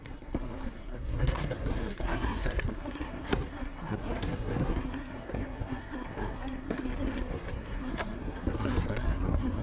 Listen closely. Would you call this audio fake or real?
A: fake